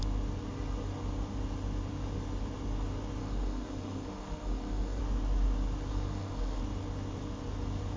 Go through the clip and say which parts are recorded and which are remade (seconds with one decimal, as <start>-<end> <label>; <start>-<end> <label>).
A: 0.0-3.2 recorded; 3.2-5.0 remade; 5.0-5.9 recorded; 5.9-6.6 remade; 6.6-8.0 recorded